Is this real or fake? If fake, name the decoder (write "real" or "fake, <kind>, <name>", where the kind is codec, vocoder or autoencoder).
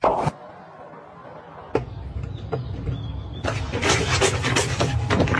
real